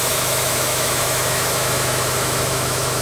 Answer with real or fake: fake